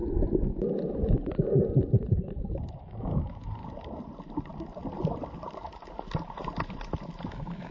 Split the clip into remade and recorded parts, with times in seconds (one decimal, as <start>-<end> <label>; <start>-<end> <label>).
0.0-2.8 recorded; 2.8-3.6 remade; 3.6-7.3 recorded; 7.3-7.7 remade